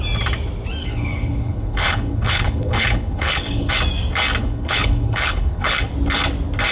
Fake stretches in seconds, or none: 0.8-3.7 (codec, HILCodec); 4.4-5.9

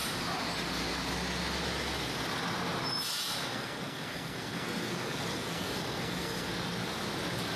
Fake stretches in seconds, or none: 3.5-6.5 (codec, SNAC)